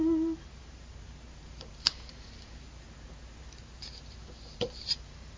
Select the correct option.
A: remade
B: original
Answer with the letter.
A